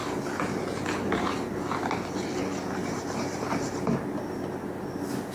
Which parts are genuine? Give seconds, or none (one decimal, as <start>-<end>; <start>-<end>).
0.0-2.8; 3.4-5.3